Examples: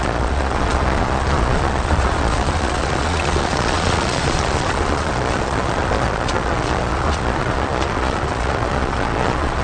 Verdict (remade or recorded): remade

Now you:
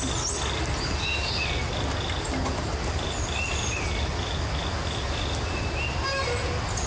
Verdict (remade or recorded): recorded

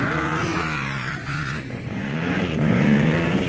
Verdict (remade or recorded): remade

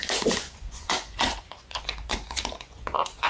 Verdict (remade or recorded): remade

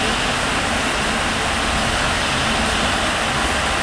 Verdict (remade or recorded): recorded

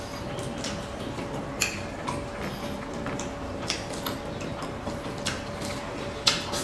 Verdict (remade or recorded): recorded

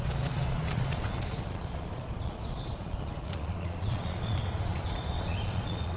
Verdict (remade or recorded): remade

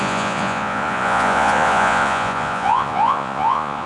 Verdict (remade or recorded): remade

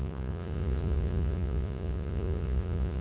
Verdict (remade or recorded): remade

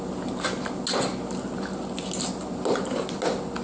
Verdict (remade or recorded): recorded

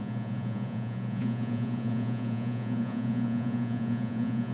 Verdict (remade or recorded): remade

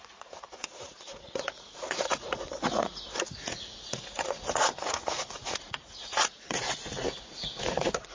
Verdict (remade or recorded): remade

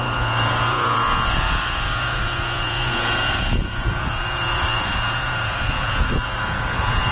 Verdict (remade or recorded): remade